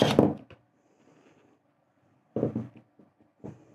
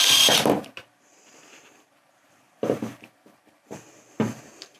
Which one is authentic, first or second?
first